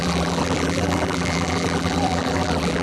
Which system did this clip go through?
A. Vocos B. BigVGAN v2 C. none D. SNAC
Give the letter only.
B